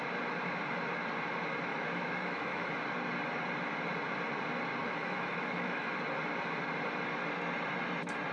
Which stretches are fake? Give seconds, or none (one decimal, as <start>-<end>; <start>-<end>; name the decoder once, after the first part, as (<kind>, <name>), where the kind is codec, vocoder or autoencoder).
1.7-2.7 (autoencoder, DAC-VAE); 4.8-5.9